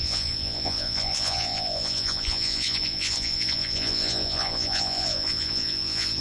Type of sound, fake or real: fake